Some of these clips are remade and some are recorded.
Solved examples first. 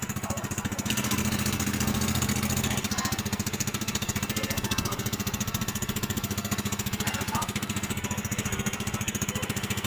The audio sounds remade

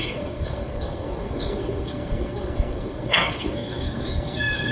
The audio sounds remade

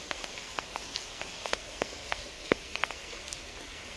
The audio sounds remade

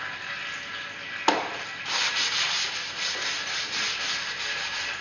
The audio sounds recorded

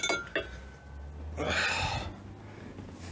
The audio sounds recorded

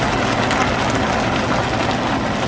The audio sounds recorded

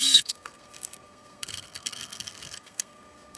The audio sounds remade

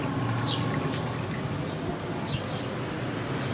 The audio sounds recorded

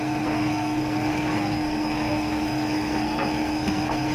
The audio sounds remade